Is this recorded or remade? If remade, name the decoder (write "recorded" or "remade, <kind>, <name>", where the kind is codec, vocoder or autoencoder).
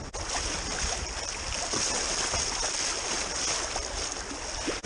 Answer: recorded